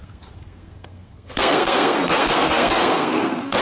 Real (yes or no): no